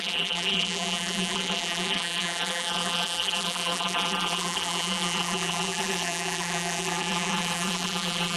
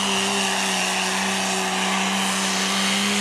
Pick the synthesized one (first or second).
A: first